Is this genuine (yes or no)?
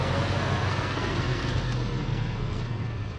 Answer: no